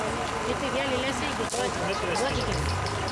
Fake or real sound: real